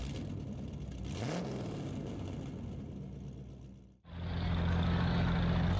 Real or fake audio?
real